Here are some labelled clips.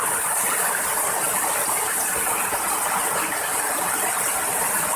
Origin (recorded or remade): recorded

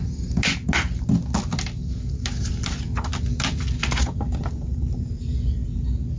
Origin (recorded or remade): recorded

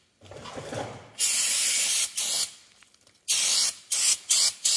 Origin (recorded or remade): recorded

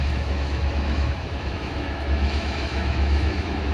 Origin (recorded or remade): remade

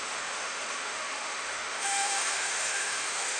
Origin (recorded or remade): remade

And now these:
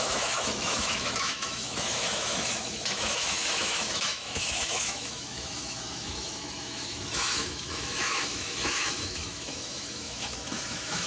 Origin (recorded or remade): remade